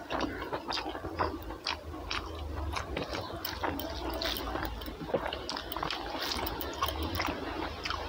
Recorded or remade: recorded